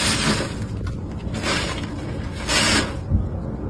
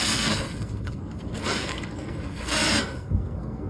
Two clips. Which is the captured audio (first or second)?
first